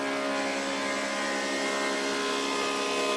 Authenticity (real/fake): real